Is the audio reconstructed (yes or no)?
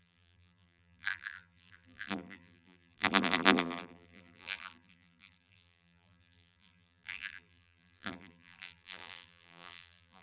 yes